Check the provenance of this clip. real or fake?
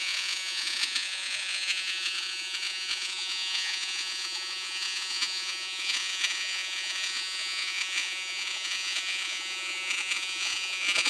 fake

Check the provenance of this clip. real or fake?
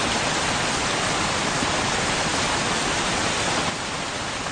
real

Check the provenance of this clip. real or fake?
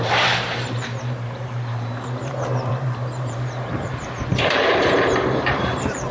fake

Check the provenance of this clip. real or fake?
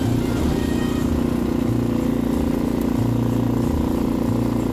real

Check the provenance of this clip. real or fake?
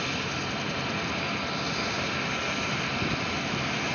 real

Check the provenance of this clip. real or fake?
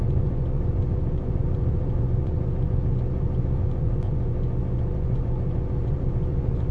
fake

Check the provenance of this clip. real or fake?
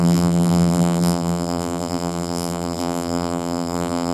fake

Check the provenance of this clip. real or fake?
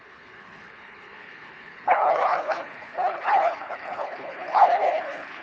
fake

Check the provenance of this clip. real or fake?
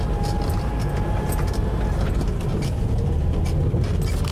real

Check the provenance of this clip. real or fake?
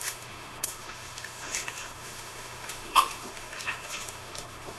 fake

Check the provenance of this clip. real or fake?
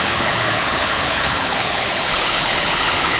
fake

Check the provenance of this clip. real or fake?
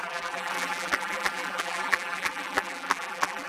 fake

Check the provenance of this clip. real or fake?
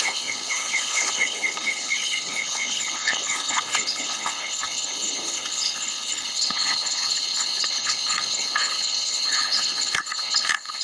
fake